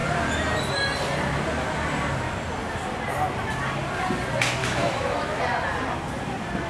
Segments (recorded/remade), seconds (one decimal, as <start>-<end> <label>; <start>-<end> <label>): 0.0-4.6 recorded; 4.6-5.4 remade; 5.4-6.7 recorded